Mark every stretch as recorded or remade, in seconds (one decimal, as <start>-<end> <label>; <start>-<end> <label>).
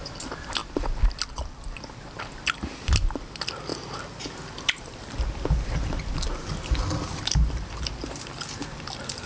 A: 0.0-9.3 recorded